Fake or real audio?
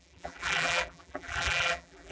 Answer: fake